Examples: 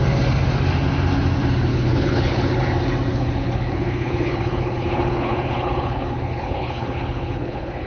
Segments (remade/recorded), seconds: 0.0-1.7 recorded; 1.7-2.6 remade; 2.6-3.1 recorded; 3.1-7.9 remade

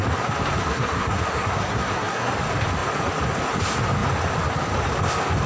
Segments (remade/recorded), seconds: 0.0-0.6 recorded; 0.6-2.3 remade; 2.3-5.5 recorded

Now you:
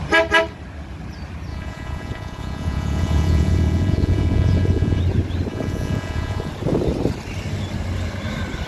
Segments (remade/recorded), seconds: 0.0-1.5 recorded; 1.5-5.0 remade; 5.0-5.5 recorded; 5.5-6.5 remade; 6.5-8.7 recorded

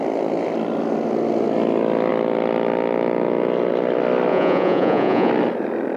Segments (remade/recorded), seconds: 0.0-4.3 recorded; 4.3-5.3 remade; 5.3-6.0 recorded